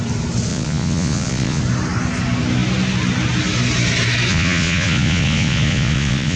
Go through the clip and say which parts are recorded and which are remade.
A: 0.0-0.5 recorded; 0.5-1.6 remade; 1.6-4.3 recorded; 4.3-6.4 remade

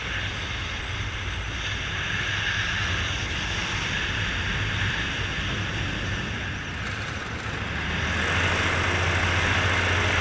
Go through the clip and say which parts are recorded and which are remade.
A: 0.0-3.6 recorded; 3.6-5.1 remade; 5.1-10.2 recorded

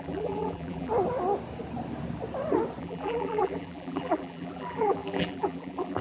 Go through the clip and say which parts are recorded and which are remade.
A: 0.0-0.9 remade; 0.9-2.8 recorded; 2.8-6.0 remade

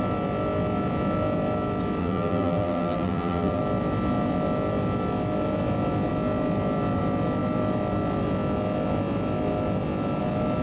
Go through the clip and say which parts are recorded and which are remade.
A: 0.0-2.0 recorded; 2.0-3.6 remade; 3.6-10.6 recorded

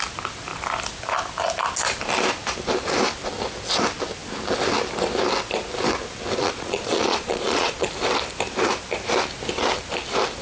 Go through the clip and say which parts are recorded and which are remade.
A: 0.0-6.4 recorded; 6.4-7.9 remade; 7.9-10.4 recorded

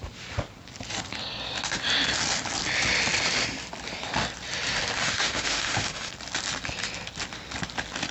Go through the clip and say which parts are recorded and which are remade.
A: 0.0-5.0 recorded; 5.0-6.1 remade; 6.1-8.1 recorded

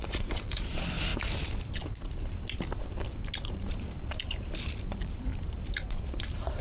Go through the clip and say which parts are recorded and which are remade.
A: 0.0-1.1 remade; 1.1-3.5 recorded; 3.5-6.6 remade

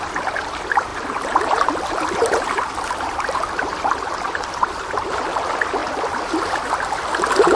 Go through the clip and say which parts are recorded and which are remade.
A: 0.0-0.9 recorded; 0.9-5.2 remade; 5.2-7.6 recorded